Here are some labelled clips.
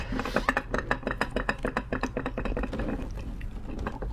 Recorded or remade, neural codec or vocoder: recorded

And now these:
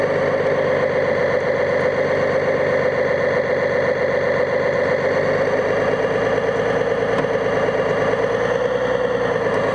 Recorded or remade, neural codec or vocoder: recorded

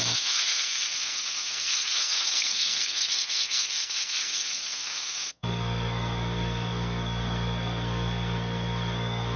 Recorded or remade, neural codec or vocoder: remade, codec, SNAC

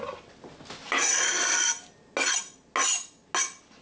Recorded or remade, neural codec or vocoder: recorded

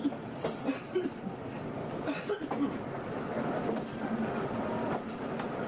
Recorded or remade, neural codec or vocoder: recorded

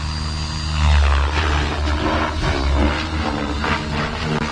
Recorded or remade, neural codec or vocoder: recorded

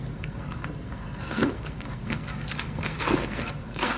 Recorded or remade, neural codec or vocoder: remade, codec, SNAC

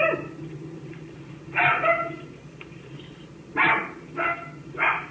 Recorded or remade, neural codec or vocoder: recorded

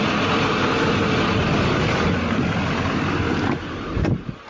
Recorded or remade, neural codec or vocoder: recorded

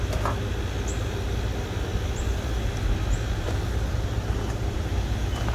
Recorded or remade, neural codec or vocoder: recorded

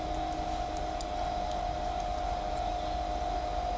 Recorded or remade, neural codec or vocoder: recorded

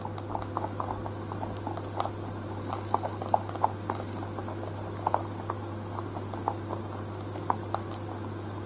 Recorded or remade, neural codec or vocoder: recorded